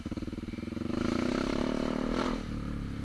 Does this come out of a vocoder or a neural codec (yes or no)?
yes